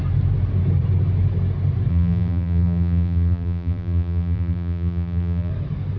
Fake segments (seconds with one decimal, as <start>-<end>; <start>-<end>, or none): 1.9-5.5